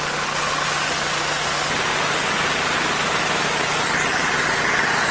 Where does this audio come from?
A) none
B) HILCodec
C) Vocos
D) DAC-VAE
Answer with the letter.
A